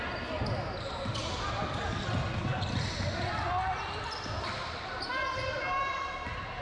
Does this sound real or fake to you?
real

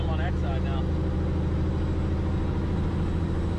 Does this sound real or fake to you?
real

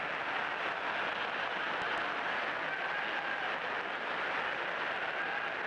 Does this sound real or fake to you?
real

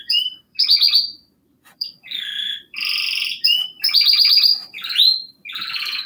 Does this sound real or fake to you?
fake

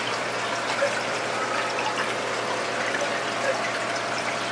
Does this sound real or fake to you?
real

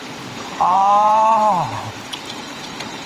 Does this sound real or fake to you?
fake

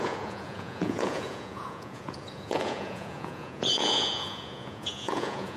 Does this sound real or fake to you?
fake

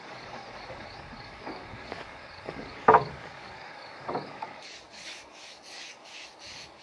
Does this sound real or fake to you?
fake